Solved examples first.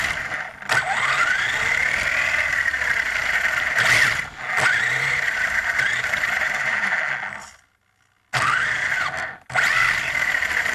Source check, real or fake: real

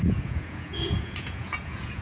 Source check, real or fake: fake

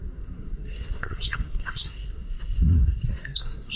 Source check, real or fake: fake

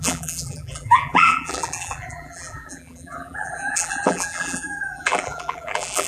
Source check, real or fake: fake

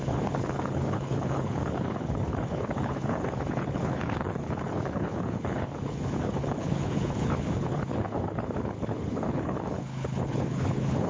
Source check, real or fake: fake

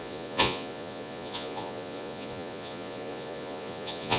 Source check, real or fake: fake